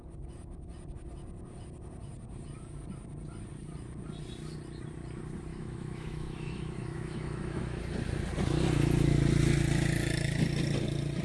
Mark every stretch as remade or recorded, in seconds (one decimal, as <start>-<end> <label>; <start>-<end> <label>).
0.0-5.5 recorded; 5.5-7.8 remade; 7.8-11.2 recorded